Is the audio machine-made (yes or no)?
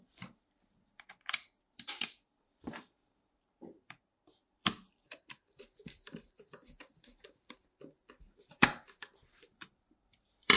yes